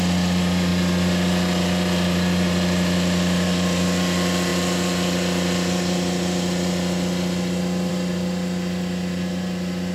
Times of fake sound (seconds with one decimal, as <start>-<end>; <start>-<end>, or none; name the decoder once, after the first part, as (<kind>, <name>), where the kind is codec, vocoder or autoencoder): none